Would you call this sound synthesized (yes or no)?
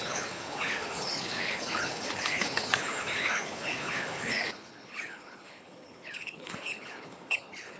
yes